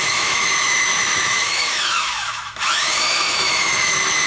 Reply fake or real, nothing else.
fake